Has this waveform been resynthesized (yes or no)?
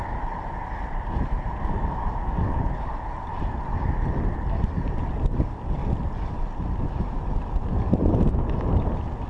no